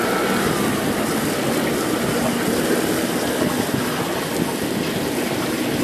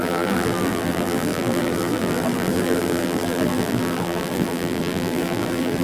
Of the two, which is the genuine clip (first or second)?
first